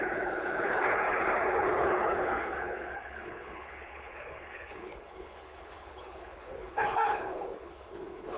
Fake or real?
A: fake